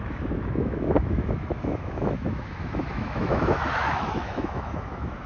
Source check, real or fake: fake